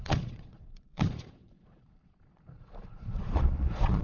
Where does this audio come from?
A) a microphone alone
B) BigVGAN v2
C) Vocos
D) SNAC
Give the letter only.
C